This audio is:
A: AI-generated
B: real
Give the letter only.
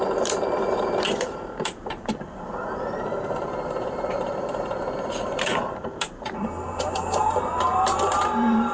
A